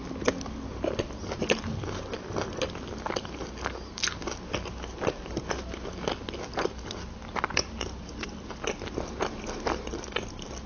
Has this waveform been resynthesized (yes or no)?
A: no